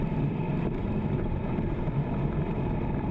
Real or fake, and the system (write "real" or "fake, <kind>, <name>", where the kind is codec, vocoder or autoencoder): fake, vocoder, BigVGAN v2